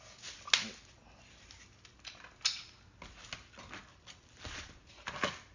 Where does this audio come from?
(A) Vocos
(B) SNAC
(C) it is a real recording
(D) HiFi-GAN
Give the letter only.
C